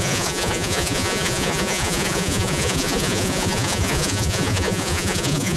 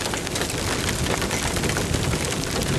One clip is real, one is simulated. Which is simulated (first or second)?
first